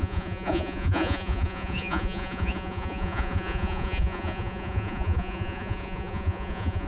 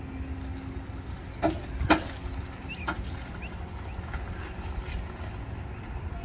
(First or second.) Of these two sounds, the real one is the second